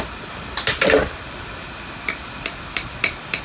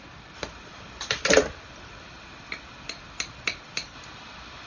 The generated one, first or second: second